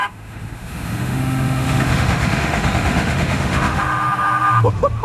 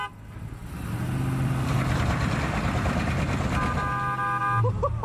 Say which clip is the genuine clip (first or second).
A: second